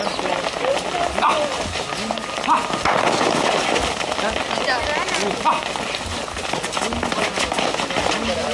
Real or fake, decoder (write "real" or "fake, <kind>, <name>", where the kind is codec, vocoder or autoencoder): real